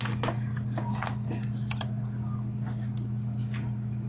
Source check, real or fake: real